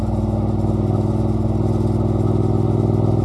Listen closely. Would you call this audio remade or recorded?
recorded